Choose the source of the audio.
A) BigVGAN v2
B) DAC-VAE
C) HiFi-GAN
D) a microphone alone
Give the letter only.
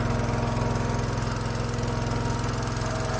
D